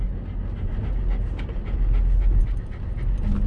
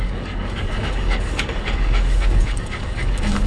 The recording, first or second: first